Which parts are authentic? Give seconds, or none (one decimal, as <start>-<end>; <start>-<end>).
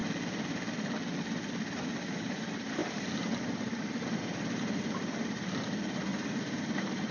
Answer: 0.0-1.7